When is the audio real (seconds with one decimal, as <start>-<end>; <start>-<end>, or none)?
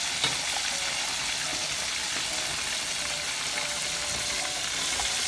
0.0-5.3